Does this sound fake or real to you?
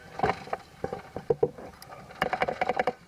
real